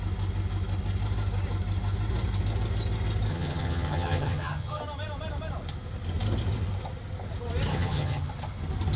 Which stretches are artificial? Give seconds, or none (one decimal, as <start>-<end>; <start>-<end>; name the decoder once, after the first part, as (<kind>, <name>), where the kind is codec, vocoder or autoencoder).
3.3-4.8 (vocoder, HiFi-GAN); 7.7-8.3